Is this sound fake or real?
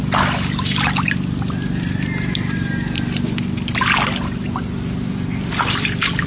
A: real